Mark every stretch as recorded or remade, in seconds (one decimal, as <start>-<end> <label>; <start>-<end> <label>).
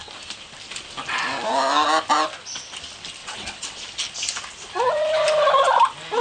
0.0-3.2 recorded; 3.2-3.8 remade; 3.8-6.2 recorded